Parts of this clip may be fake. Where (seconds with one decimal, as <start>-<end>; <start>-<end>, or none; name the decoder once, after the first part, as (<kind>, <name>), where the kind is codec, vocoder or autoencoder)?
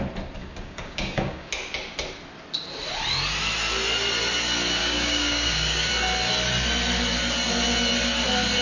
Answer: 0.4-1.5 (codec, DAC); 4.8-5.9